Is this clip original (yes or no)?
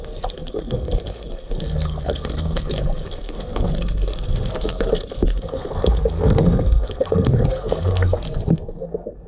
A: no